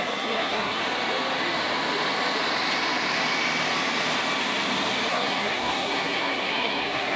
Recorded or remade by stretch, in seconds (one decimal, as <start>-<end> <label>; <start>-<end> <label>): 0.0-0.8 remade; 0.8-5.1 recorded; 5.1-7.2 remade